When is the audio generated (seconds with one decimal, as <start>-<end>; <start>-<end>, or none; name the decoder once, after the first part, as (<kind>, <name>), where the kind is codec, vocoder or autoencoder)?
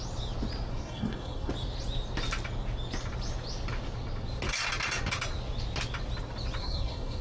0.7-1.5 (codec, SNAC); 6.6-7.2